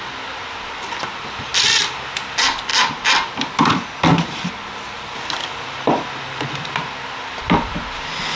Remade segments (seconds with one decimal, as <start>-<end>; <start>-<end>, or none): none